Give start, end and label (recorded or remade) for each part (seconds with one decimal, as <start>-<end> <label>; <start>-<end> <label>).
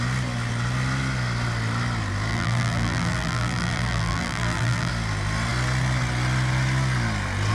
0.0-2.3 recorded; 2.3-4.9 remade; 4.9-7.5 recorded